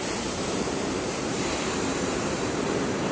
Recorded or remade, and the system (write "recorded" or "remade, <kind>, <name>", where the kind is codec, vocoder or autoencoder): remade, vocoder, BigVGAN v2